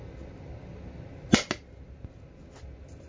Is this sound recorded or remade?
recorded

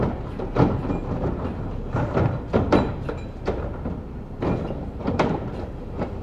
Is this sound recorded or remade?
recorded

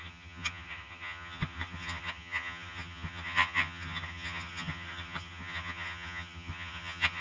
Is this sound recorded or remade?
remade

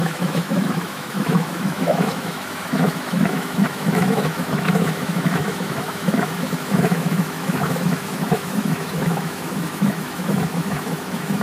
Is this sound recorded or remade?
remade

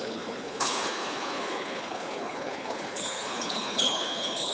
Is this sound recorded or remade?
remade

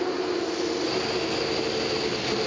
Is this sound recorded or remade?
recorded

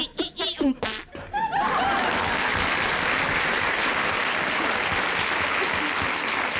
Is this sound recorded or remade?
recorded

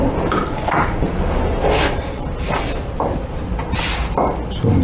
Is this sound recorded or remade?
recorded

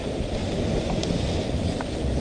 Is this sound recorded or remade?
recorded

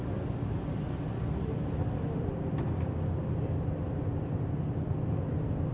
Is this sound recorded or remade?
recorded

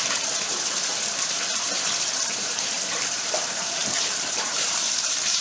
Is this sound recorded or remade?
remade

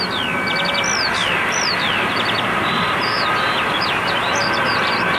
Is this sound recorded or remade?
recorded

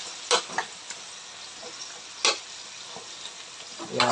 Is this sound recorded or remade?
recorded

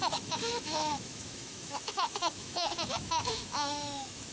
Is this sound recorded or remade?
remade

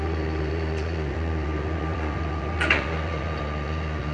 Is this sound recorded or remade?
remade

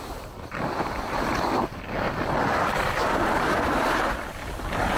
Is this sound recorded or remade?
recorded